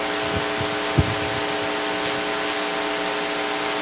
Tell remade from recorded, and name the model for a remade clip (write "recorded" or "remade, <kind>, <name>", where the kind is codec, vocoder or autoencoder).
recorded